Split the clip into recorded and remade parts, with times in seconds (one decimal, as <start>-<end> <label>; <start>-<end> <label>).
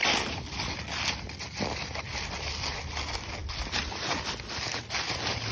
0.0-5.5 recorded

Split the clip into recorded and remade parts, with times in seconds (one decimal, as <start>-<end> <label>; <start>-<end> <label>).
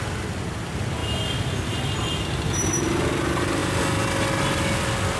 0.0-5.2 recorded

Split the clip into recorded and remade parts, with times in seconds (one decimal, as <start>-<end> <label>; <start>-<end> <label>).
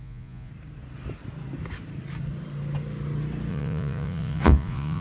0.0-0.5 remade; 0.5-3.5 recorded; 3.5-5.0 remade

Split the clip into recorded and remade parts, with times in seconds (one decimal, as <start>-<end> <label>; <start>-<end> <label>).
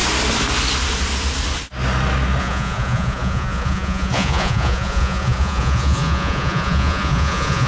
0.0-2.4 recorded; 2.4-7.7 remade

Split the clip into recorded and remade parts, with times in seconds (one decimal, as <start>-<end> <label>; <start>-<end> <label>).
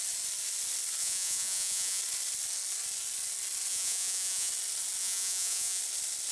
0.0-1.0 recorded; 1.0-2.0 remade; 2.0-3.7 recorded; 3.7-4.5 remade; 4.5-5.0 recorded; 5.0-5.8 remade; 5.8-6.3 recorded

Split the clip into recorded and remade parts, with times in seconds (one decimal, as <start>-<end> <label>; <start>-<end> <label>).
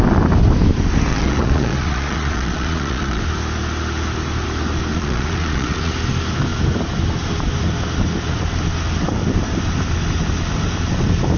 0.0-1.1 recorded; 1.1-3.2 remade; 3.2-4.9 recorded; 4.9-5.9 remade; 5.9-11.4 recorded